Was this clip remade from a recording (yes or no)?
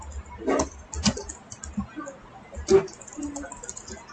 no